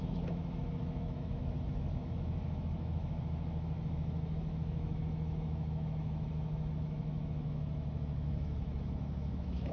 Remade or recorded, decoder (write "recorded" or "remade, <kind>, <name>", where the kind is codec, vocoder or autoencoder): remade, autoencoder, DAC-VAE